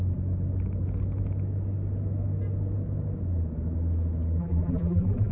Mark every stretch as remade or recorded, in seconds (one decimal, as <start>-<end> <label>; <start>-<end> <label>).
0.0-4.4 recorded; 4.4-5.3 remade

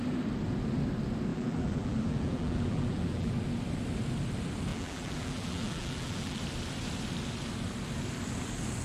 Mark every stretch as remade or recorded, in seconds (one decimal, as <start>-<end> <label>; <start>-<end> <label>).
0.0-1.3 recorded; 1.3-3.3 remade; 3.3-4.7 recorded; 4.7-6.4 remade; 6.4-8.8 recorded

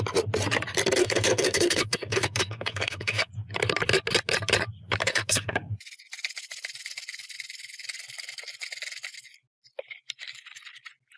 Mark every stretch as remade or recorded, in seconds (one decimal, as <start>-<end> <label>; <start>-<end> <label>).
0.0-1.0 recorded; 1.0-3.3 remade; 3.3-5.0 recorded; 5.0-5.7 remade; 5.7-11.2 recorded

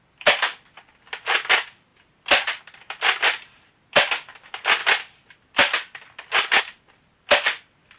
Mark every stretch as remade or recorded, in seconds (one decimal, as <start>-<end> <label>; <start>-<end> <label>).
0.0-8.0 recorded

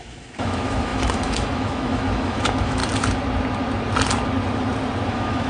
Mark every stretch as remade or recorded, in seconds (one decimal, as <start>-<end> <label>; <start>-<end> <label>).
0.0-2.8 remade; 2.8-5.1 recorded; 5.1-5.5 remade